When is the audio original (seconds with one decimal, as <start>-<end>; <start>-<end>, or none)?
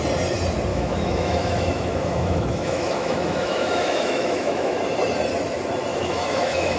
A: 0.0-0.7; 4.8-5.9